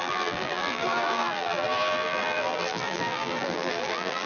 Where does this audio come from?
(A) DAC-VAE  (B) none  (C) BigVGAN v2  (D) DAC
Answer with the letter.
C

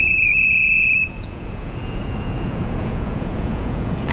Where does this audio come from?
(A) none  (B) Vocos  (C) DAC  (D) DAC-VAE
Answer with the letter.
B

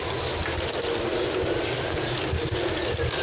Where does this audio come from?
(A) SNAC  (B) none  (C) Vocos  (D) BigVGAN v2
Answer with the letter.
B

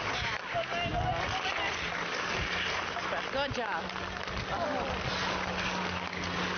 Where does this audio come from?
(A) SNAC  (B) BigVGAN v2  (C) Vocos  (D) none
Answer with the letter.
D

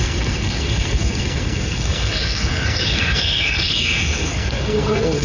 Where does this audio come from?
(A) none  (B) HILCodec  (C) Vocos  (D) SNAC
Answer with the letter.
D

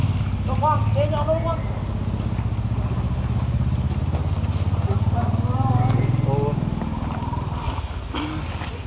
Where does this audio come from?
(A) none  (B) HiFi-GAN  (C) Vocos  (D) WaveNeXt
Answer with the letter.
A